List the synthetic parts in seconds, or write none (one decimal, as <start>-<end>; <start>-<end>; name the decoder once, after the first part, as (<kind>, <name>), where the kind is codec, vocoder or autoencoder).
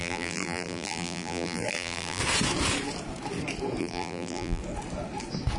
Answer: 0.0-2.2 (vocoder, BigVGAN v2); 3.8-4.6